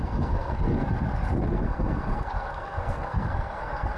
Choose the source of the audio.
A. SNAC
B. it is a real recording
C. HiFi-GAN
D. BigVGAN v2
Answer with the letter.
A